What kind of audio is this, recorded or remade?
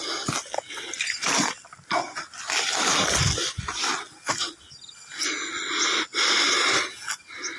recorded